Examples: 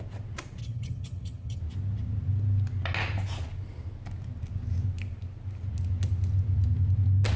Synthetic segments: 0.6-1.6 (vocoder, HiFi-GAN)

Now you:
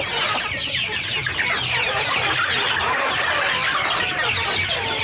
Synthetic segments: none

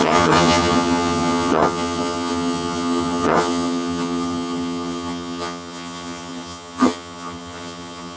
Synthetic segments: 0.0-8.2 (vocoder, HiFi-GAN)

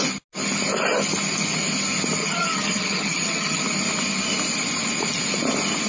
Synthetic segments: 2.2-3.6 (vocoder, HiFi-GAN)

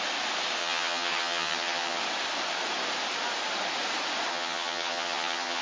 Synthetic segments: 0.6-2.0 (vocoder, HiFi-GAN); 4.3-5.6